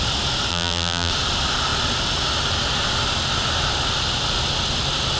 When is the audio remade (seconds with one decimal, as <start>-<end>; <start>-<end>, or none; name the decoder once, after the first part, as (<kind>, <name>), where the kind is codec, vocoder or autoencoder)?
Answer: 0.5-1.1 (vocoder, BigVGAN v2)